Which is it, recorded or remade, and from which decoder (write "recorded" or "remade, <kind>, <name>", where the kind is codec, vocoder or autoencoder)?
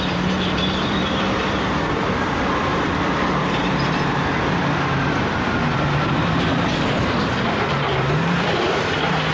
remade, vocoder, BigVGAN v2